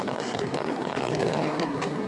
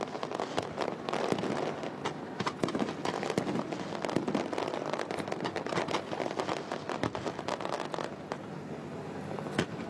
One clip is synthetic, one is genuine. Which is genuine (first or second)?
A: second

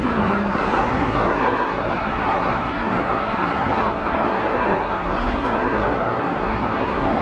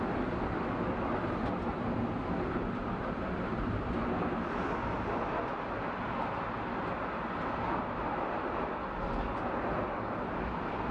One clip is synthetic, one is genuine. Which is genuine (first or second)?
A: second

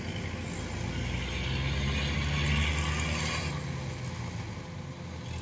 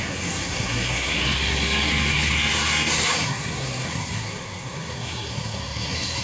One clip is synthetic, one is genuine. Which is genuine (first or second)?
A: first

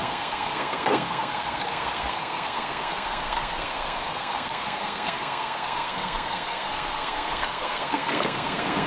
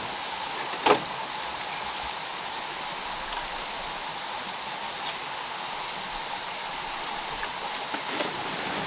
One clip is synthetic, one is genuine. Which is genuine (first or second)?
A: second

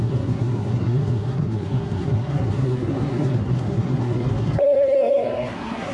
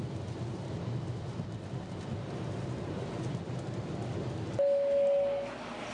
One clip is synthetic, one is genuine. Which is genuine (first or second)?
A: second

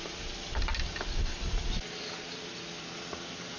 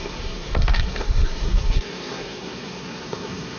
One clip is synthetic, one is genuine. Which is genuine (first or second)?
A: first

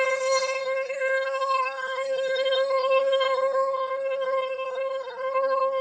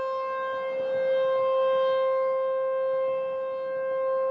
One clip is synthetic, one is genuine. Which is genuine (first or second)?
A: second